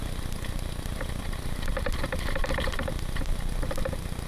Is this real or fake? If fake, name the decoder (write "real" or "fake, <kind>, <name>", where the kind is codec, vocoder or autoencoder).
real